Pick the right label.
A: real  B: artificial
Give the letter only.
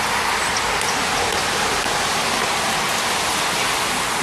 A